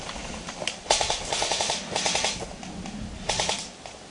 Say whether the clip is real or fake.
real